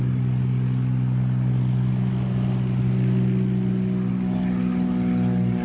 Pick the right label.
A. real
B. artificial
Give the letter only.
A